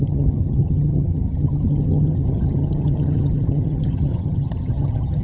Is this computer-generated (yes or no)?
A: yes